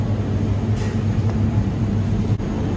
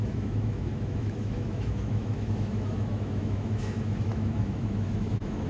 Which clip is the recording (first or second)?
first